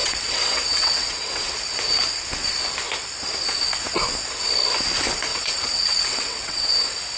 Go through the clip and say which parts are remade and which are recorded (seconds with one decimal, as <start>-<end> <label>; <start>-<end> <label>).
0.0-1.5 remade; 1.5-5.3 recorded; 5.3-6.7 remade; 6.7-7.2 recorded